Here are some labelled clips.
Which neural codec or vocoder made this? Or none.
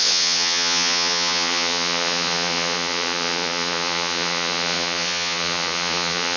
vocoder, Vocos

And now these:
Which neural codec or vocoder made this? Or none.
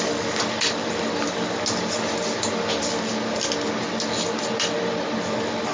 none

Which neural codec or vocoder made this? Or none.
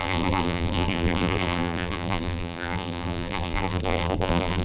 vocoder, BigVGAN v2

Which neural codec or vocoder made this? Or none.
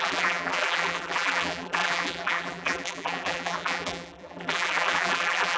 vocoder, BigVGAN v2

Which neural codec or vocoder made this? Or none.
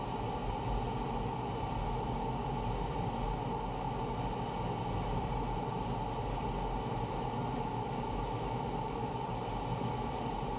none